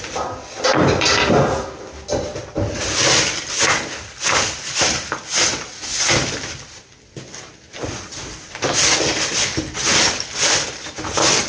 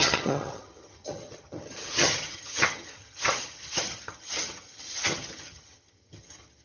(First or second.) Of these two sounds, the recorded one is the first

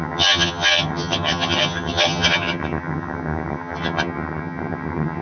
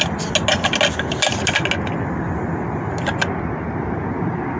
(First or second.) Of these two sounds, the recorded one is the second